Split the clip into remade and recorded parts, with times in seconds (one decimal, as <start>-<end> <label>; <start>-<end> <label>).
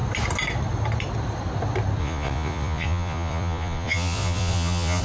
0.0-2.0 recorded; 2.0-5.0 remade